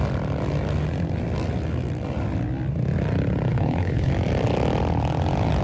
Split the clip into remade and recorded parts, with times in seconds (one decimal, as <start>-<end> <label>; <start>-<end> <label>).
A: 0.0-3.5 recorded; 3.5-4.1 remade; 4.1-5.6 recorded